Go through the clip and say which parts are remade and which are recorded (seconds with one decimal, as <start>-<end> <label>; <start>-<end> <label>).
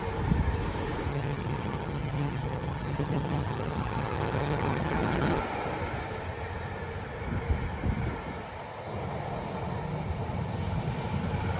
0.0-1.1 recorded; 1.1-5.4 remade; 5.4-11.6 recorded